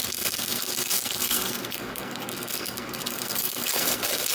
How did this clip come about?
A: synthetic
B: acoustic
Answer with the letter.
A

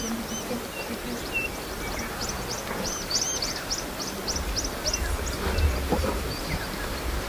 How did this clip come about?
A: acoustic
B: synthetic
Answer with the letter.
A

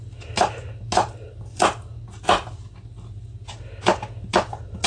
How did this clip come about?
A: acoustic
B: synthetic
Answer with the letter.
A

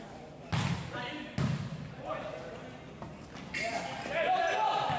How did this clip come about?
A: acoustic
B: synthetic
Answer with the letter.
A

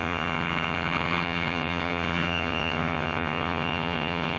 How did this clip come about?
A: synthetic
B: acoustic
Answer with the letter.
A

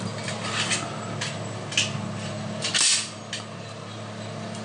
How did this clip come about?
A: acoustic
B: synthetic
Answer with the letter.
A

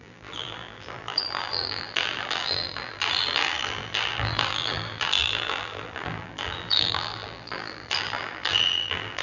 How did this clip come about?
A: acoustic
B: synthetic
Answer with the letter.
B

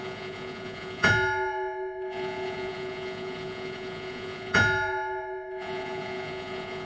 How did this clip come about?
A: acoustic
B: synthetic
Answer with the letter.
B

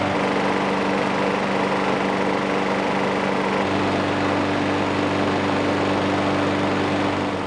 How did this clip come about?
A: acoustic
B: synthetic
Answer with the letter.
A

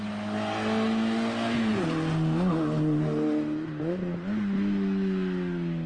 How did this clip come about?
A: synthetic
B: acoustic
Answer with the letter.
B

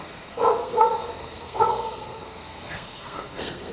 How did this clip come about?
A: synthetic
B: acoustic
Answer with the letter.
A